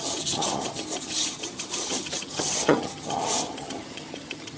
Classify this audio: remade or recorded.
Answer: remade